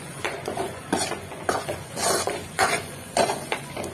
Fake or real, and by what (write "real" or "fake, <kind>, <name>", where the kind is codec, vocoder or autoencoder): fake, vocoder, Vocos